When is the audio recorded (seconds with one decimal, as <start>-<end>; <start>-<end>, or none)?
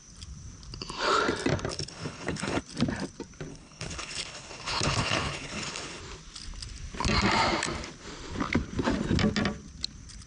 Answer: 0.0-1.7; 2.6-3.5; 6.0-10.3